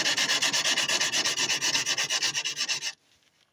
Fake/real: real